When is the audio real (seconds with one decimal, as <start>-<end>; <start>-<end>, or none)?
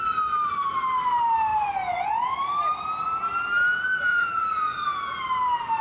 0.0-4.1; 5.2-5.8